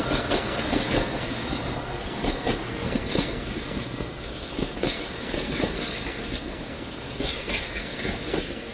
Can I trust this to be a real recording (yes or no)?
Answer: no